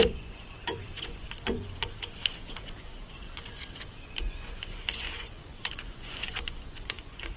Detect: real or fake fake